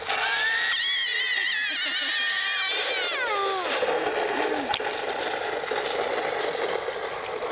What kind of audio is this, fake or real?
real